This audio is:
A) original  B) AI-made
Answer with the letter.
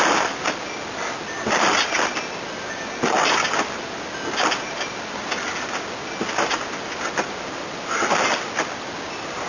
A